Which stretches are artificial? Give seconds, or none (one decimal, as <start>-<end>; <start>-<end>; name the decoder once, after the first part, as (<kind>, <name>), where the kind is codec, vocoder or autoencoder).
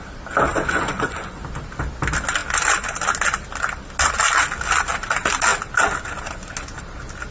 0.5-1.4 (vocoder, Vocos)